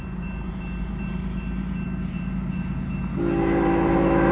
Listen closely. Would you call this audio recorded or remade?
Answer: recorded